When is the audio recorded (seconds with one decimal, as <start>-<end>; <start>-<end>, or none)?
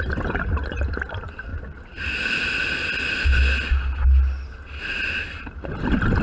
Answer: 1.5-5.2